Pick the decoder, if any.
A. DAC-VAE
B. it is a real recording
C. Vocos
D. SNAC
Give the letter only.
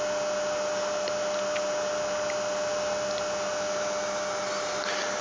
B